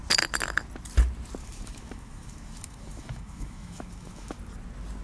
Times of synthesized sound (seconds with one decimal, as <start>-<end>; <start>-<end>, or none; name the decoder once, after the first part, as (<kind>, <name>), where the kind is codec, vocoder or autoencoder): 1.4-4.4 (autoencoder, DAC-VAE)